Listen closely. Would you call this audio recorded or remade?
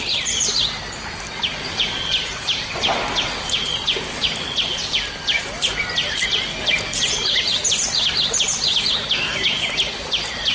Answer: recorded